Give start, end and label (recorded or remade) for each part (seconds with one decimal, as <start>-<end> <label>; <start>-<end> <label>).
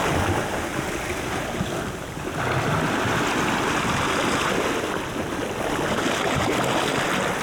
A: 0.0-7.4 recorded